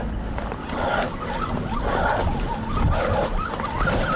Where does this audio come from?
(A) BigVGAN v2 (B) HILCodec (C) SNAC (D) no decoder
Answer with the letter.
D